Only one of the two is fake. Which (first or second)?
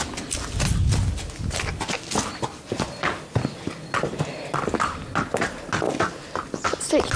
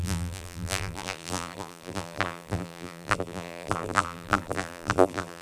second